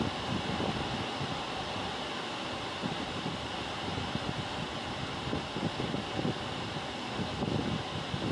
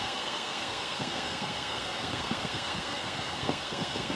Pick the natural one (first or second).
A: first